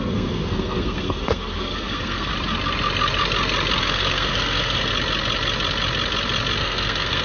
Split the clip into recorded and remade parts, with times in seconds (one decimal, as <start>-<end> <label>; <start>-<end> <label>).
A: 0.0-2.3 remade; 2.3-3.8 recorded; 3.8-4.9 remade; 4.9-6.6 recorded; 6.6-7.2 remade